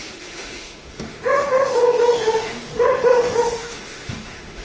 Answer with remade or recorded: remade